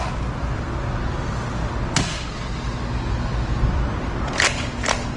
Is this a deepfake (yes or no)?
no